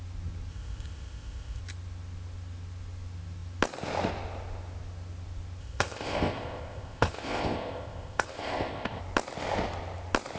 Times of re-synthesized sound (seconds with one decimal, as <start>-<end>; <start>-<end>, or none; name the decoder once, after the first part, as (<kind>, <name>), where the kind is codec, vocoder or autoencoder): 0.5-1.6 (codec, ZipCodec); 5.6-9.0